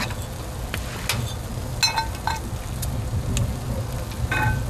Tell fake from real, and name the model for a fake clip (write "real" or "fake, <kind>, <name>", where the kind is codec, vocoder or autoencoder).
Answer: real